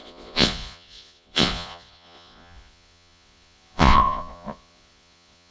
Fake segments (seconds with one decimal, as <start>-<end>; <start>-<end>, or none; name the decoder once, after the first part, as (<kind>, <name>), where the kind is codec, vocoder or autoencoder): 0.0-5.5 (vocoder, Vocos)